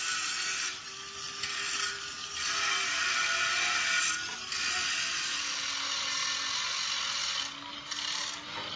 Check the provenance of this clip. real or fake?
real